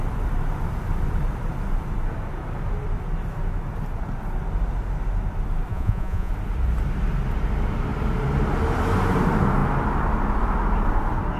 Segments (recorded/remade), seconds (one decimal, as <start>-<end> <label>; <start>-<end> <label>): 0.0-5.7 recorded; 5.7-6.3 remade; 6.3-11.4 recorded